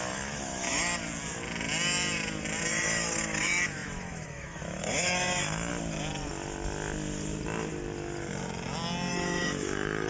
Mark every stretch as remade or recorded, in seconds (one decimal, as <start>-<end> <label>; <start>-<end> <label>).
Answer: 0.0-0.9 remade; 0.9-2.7 recorded; 2.7-5.7 remade; 5.7-9.1 recorded; 9.1-10.1 remade